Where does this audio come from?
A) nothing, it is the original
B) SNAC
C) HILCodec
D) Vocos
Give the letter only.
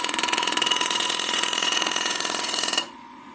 D